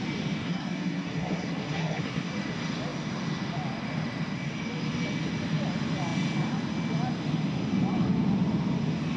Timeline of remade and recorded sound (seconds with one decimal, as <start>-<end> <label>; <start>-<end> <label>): 0.0-0.4 recorded; 0.4-2.3 remade; 2.3-9.2 recorded